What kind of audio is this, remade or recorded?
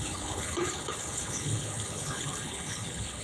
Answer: remade